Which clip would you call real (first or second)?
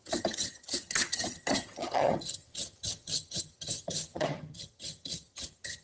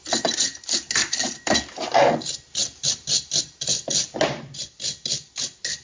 second